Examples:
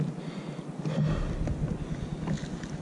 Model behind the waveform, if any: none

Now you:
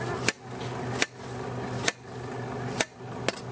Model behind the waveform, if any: none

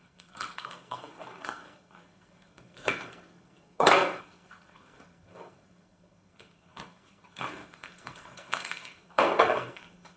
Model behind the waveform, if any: codec, SNAC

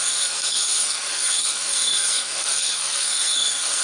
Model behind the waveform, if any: codec, SNAC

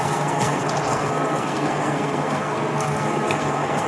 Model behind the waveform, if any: codec, SNAC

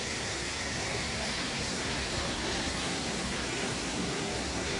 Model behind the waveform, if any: codec, SNAC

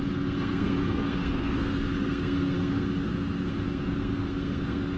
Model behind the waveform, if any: codec, SNAC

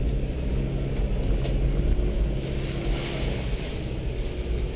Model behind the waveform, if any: none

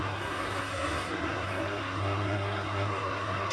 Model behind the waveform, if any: codec, SNAC